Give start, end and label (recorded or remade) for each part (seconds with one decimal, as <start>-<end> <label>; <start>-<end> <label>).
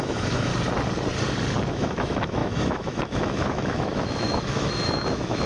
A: 0.0-0.5 remade; 0.5-1.7 recorded; 1.7-5.5 remade